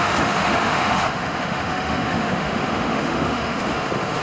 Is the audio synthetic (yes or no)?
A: yes